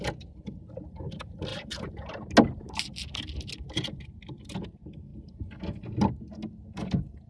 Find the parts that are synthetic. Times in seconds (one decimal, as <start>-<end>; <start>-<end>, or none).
1.5-2.1

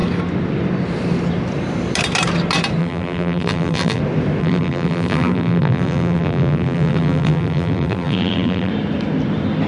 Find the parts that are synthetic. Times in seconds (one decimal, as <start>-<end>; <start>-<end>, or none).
2.8-4.0; 4.4-8.7

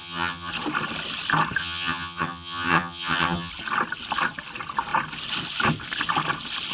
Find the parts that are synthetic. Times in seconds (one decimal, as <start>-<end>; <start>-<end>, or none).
0.0-0.5; 1.6-3.5

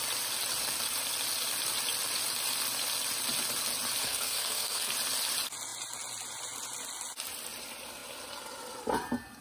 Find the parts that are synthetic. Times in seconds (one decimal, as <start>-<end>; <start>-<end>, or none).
4.0-4.9